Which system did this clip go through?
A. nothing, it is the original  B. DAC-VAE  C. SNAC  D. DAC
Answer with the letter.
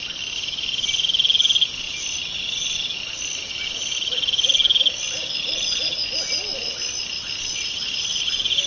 A